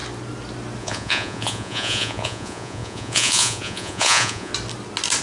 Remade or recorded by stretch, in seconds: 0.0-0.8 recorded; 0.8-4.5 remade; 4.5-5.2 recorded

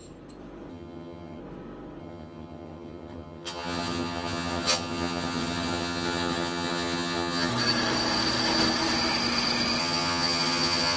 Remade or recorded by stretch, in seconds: 0.0-0.7 recorded; 0.7-1.4 remade; 1.4-2.0 recorded; 2.0-7.5 remade; 7.5-9.8 recorded; 9.8-11.0 remade

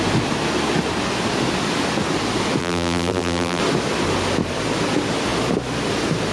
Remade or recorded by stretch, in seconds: 0.0-2.6 recorded; 2.6-3.6 remade; 3.6-6.3 recorded

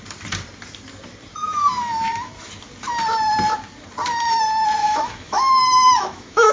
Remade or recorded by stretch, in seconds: 0.0-1.4 recorded; 1.4-2.3 remade; 2.3-4.8 recorded; 4.8-6.5 remade

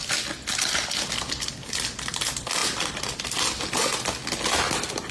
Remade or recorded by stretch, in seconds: 0.0-5.1 recorded

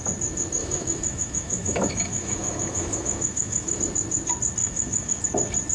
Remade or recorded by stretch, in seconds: 0.0-0.6 recorded; 0.6-3.8 remade; 3.8-4.6 recorded; 4.6-5.2 remade; 5.2-5.7 recorded

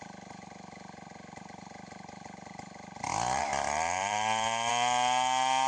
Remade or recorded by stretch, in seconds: 0.0-3.4 recorded; 3.4-4.7 remade; 4.7-5.7 recorded

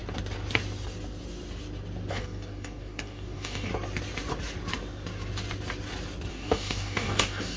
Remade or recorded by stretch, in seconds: 0.0-2.1 recorded; 2.1-3.7 remade; 3.7-6.3 recorded; 6.3-7.6 remade